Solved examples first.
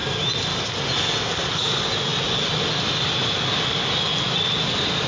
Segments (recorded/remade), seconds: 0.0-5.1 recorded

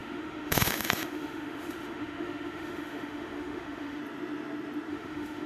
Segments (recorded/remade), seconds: 0.0-4.0 remade; 4.0-4.9 recorded; 4.9-5.5 remade

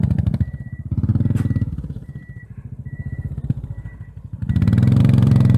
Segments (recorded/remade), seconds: 0.0-1.1 remade; 1.1-1.7 recorded; 1.7-4.4 remade; 4.4-5.0 recorded; 5.0-5.6 remade

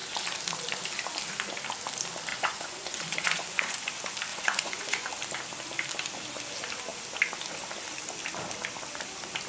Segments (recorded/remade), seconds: 0.0-2.3 recorded; 2.3-3.9 remade; 3.9-4.3 recorded; 4.3-5.1 remade; 5.1-9.5 recorded

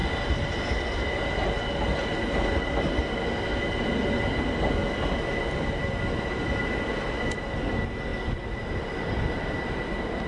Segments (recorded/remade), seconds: 0.0-10.3 recorded